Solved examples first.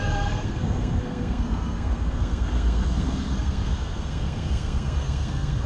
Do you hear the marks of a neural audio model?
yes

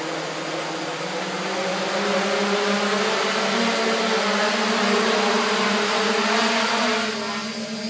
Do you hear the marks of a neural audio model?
no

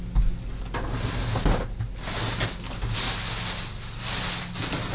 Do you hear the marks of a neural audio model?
no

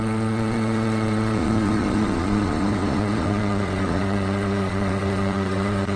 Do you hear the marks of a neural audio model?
yes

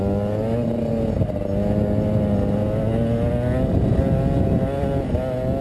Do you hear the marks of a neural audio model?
no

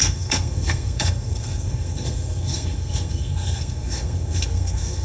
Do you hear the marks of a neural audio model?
yes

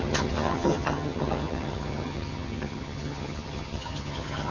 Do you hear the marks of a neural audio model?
yes